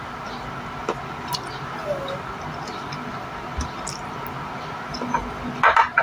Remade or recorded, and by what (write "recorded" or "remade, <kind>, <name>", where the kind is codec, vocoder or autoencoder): recorded